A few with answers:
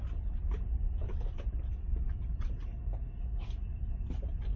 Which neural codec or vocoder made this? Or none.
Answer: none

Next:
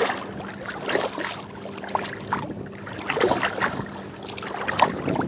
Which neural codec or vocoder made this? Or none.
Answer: none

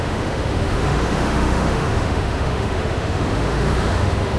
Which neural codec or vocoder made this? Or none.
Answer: autoencoder, DAC-VAE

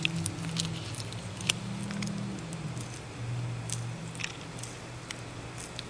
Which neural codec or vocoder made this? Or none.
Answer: none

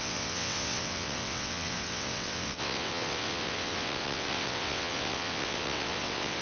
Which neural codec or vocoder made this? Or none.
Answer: vocoder, WaveNeXt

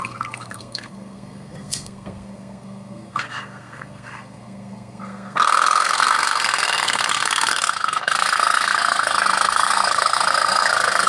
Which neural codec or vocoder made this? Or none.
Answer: codec, SNAC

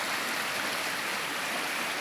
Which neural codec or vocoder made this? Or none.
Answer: none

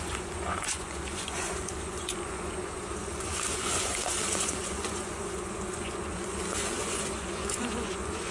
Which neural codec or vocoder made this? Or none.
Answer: vocoder, Vocos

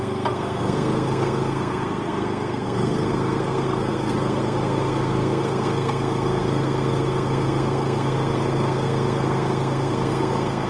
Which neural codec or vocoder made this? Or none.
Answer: codec, SNAC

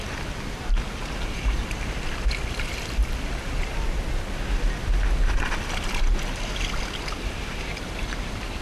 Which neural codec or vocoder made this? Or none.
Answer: none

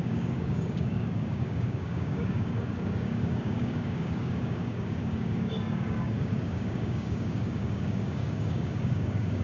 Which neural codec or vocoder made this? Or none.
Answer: codec, DAC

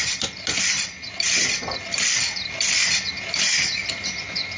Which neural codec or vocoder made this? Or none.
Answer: none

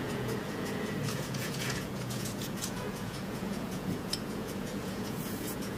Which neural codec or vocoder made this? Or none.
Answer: vocoder, Vocos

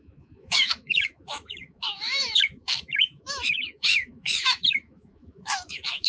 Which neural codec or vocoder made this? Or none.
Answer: autoencoder, DAC-VAE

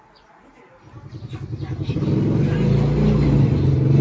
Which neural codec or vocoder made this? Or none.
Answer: none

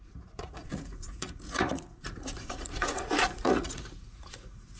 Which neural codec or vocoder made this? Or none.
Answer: vocoder, Vocos